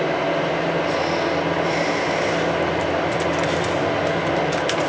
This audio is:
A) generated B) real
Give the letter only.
B